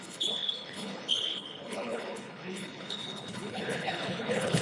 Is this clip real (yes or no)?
no